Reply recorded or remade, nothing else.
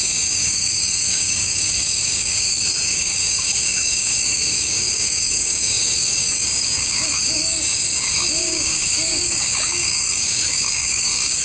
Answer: remade